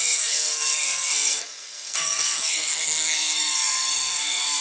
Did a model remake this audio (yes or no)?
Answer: yes